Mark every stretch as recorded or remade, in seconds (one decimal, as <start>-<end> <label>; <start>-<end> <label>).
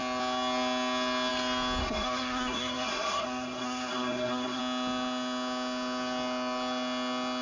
0.0-1.8 recorded; 1.8-4.6 remade; 4.6-7.4 recorded